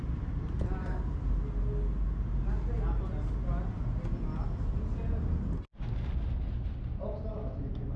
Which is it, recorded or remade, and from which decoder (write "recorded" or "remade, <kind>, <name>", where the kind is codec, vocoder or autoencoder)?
recorded